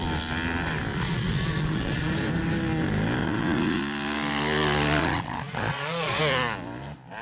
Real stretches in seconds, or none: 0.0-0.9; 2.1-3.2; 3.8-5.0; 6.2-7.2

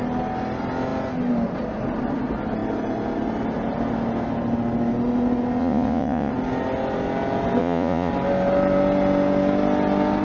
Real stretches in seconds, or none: 0.0-5.6; 6.3-7.6; 8.1-10.2